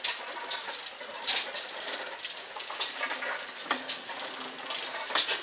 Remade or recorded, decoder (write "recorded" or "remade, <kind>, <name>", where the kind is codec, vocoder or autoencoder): recorded